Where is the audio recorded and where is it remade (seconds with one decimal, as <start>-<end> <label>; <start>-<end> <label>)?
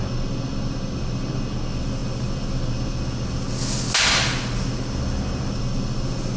0.0-6.4 recorded